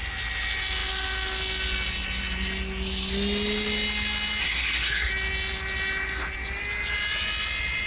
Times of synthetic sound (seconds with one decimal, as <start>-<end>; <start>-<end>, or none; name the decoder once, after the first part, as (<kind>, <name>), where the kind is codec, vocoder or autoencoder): 4.4-5.1 (codec, SNAC)